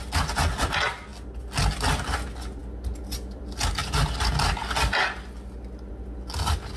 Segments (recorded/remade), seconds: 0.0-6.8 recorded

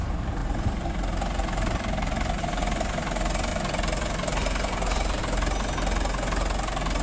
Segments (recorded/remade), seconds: 0.0-0.4 recorded; 0.4-2.4 remade; 2.4-3.5 recorded; 3.5-5.2 remade; 5.2-7.0 recorded

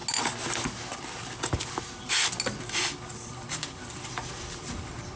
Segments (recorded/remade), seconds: 0.0-3.1 recorded; 3.1-5.2 remade

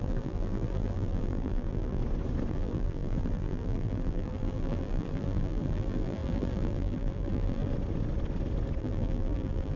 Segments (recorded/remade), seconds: 0.0-2.0 remade; 2.0-2.5 recorded; 2.5-7.7 remade; 7.7-8.8 recorded; 8.8-9.8 remade